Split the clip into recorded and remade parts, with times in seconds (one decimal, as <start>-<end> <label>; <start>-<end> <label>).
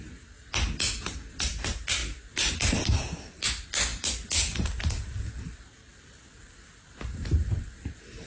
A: 0.0-8.3 recorded